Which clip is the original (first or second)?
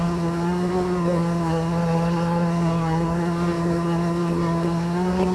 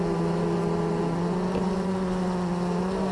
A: second